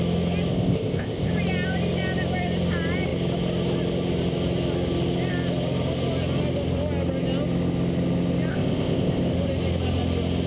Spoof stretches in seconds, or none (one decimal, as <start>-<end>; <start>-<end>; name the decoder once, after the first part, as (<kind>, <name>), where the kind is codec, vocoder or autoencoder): 0.5-1.3 (codec, ZipCodec); 8.5-9.2